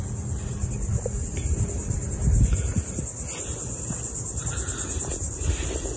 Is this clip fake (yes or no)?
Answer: no